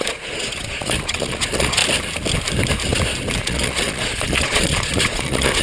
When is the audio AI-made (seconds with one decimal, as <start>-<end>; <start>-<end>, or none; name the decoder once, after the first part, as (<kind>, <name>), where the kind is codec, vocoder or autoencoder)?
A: 0.0-1.8 (vocoder, Vocos); 3.4-5.6